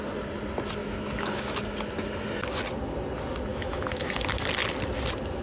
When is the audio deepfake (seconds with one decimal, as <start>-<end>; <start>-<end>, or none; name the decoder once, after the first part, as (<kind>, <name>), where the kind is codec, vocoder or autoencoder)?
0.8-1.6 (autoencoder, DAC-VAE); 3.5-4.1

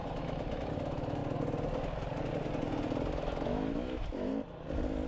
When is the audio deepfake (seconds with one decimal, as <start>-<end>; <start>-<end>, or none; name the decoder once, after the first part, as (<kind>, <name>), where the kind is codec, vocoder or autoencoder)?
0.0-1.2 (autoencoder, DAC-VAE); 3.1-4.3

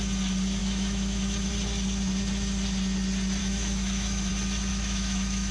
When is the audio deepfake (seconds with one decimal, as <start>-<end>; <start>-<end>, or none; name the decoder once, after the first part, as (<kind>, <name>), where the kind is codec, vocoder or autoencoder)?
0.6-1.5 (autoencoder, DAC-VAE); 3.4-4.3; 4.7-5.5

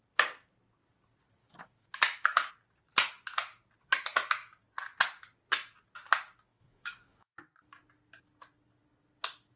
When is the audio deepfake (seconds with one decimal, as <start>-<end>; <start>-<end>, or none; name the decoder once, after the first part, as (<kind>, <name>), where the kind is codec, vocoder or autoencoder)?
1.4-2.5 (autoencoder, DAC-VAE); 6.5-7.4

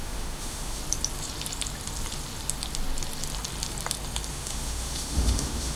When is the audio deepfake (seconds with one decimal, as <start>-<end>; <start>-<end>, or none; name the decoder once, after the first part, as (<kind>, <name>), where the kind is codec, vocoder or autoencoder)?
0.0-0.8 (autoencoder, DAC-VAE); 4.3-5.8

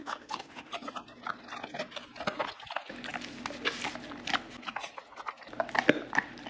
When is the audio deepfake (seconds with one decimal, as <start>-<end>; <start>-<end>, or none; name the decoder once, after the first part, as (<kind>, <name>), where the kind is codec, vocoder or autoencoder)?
0.0-0.7 (autoencoder, DAC-VAE)

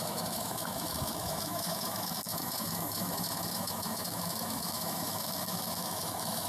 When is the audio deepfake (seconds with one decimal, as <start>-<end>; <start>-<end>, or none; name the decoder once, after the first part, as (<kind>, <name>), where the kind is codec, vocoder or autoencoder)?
0.0-6.5 (autoencoder, DAC-VAE)